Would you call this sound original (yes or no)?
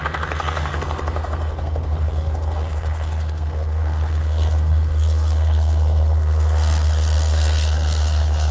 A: no